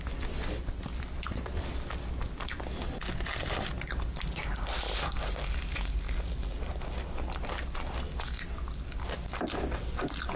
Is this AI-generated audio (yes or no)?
no